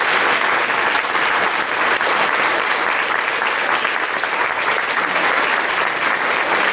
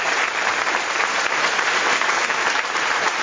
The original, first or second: first